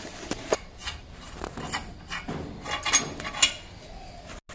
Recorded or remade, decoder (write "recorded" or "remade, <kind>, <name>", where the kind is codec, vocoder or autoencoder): recorded